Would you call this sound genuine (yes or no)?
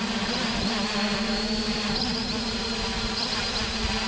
no